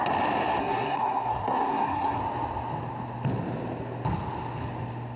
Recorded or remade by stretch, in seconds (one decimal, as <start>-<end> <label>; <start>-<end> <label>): 0.0-0.6 recorded; 0.6-2.2 remade; 2.2-5.2 recorded